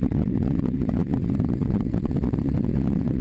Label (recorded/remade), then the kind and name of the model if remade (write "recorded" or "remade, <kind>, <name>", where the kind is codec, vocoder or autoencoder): remade, vocoder, WaveNeXt